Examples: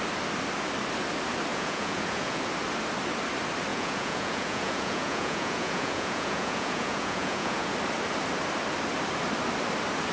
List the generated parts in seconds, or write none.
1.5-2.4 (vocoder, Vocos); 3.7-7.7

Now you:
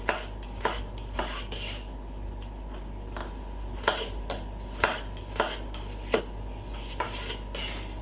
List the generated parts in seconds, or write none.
none

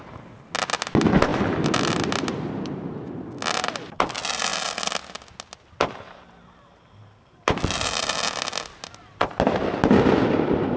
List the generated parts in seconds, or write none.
none

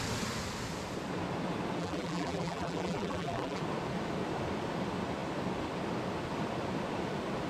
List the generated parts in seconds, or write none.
1.8-3.6 (vocoder, BigVGAN v2)

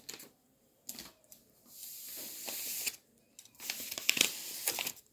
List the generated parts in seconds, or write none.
none

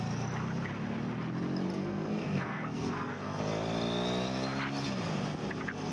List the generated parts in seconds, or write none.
1.7-3.4 (codec, SNAC)